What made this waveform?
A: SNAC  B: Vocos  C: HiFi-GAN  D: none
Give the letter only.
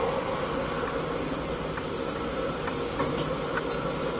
D